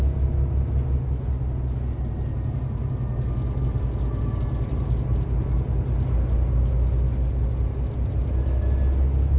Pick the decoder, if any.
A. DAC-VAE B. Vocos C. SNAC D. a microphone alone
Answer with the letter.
D